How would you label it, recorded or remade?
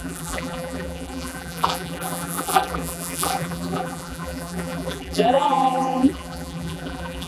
remade